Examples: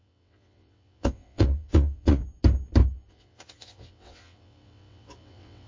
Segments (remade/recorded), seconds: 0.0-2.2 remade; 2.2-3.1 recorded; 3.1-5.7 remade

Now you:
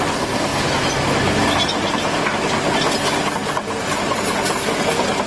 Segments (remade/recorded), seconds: 0.0-5.3 recorded